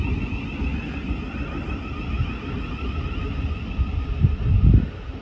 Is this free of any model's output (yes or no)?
yes